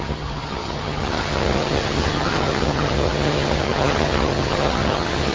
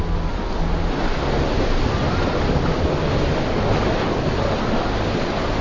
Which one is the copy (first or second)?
first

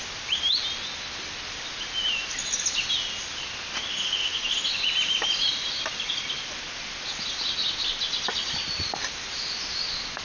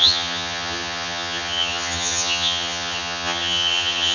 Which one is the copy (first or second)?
second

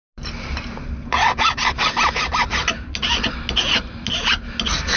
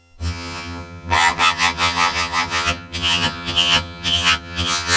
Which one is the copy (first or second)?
second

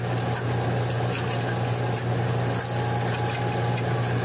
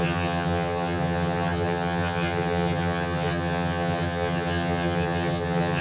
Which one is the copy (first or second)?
second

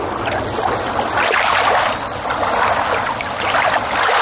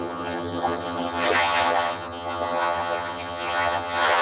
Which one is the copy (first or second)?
second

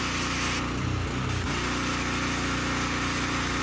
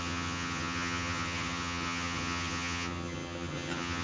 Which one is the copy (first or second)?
second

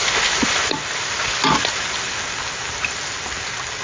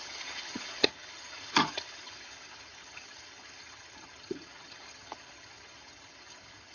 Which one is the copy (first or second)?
second